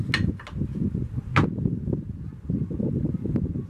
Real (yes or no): yes